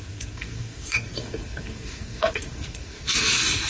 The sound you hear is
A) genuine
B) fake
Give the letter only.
B